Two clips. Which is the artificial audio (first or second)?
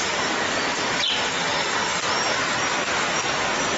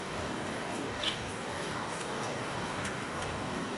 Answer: second